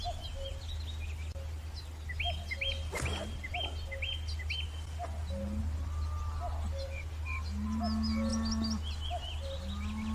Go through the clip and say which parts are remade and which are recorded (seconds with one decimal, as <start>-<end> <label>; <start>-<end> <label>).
0.0-10.1 recorded

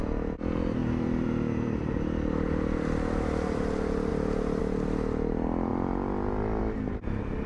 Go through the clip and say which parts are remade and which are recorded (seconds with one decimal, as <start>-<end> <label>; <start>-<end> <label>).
0.0-0.8 recorded; 0.8-3.6 remade; 3.6-7.5 recorded

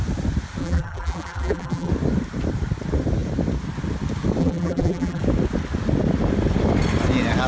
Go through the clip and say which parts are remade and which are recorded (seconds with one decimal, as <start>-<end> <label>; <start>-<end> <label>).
0.0-0.6 recorded; 0.6-1.9 remade; 1.9-4.4 recorded; 4.4-5.2 remade; 5.2-7.5 recorded

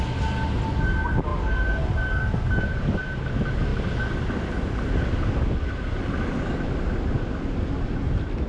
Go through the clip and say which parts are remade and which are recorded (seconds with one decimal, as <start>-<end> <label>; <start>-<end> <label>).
0.0-8.5 recorded

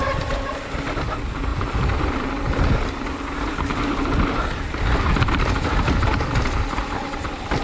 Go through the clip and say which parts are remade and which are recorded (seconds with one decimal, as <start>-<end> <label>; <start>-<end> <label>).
0.0-1.5 remade; 1.5-3.4 recorded; 3.4-7.6 remade

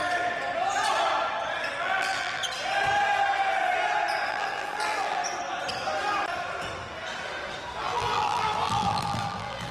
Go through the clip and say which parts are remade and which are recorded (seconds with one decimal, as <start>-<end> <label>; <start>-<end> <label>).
0.0-1.8 recorded; 1.8-2.4 remade; 2.4-4.3 recorded; 4.3-5.2 remade; 5.2-7.8 recorded; 7.8-9.7 remade

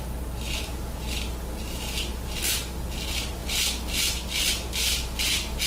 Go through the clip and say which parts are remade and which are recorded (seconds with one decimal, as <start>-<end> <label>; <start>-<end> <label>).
0.0-5.7 recorded